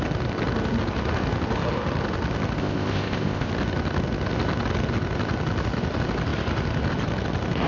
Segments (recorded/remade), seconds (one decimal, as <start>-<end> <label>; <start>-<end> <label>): 0.0-2.6 recorded; 2.6-3.5 remade; 3.5-7.7 recorded

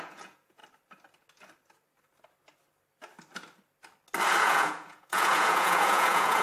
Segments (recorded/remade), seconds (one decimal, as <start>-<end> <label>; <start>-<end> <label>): 0.0-0.6 remade; 0.6-4.4 recorded; 4.4-6.4 remade

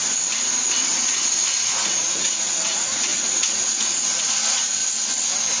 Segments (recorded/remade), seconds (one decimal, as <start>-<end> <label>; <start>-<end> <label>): 0.0-0.9 recorded; 0.9-4.8 remade; 4.8-5.6 recorded

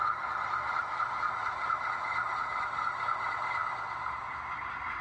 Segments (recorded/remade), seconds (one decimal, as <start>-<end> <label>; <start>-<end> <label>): 0.0-0.8 recorded; 0.8-1.8 remade; 1.8-5.0 recorded

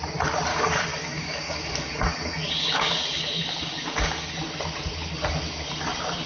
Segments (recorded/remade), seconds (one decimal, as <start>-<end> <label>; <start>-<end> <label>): 0.0-0.5 recorded; 0.5-4.3 remade; 4.3-6.3 recorded